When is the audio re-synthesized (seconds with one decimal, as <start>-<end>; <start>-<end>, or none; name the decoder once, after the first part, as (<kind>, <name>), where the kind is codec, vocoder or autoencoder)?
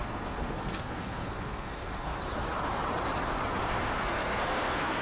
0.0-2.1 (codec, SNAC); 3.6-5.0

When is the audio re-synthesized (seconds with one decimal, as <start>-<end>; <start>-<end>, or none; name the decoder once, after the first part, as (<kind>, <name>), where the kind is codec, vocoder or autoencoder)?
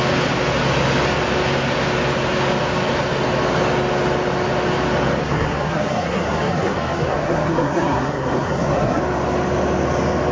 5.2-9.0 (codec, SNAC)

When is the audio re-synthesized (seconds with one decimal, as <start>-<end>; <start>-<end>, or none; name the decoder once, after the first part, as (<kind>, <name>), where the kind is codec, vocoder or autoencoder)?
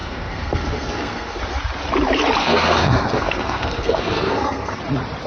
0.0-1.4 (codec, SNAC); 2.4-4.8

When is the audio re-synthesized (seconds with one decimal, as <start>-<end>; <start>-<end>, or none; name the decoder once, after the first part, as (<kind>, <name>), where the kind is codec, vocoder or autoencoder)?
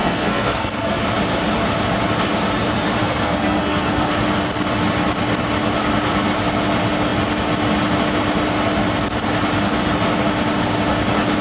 0.0-1.0 (codec, SNAC); 3.0-4.1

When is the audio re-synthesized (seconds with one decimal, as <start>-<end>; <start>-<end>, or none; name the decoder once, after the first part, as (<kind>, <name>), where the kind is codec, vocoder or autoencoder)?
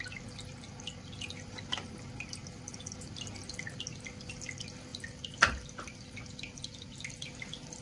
none